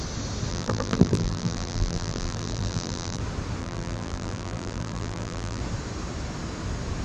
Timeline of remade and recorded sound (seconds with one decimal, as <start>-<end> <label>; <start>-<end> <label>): 0.0-0.5 recorded; 0.5-3.2 remade; 3.2-3.6 recorded; 3.6-5.6 remade; 5.6-7.0 recorded